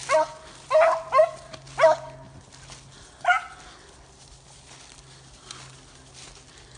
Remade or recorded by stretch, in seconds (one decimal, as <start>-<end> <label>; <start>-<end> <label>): 0.0-6.8 recorded